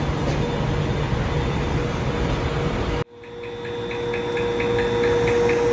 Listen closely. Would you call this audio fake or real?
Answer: real